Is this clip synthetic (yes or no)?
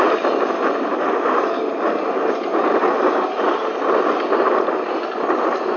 no